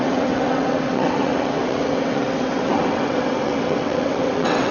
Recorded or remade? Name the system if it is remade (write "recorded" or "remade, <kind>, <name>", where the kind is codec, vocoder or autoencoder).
remade, vocoder, WaveNeXt